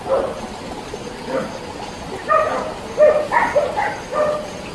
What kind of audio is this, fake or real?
real